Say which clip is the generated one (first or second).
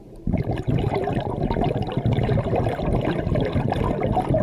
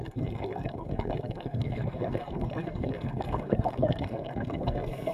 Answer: second